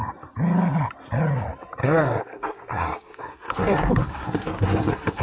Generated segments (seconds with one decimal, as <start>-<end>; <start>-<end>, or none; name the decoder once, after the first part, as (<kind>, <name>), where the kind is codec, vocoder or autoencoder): 1.8-5.2 (codec, SNAC)